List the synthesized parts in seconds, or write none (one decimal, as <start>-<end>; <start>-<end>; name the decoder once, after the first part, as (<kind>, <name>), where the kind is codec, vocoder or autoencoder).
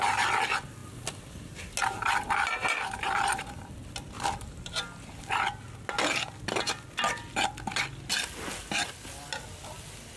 none